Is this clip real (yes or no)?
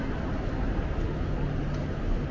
yes